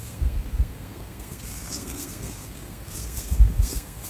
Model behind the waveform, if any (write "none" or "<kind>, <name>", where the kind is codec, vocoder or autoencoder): codec, SNAC